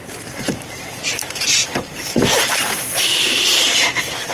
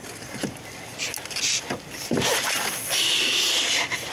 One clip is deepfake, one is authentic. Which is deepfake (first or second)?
first